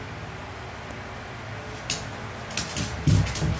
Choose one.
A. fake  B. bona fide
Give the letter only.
B